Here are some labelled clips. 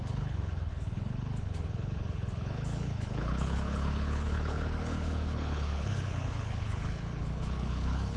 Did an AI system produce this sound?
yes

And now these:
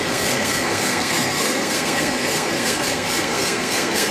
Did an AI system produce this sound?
yes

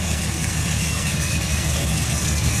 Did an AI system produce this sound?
yes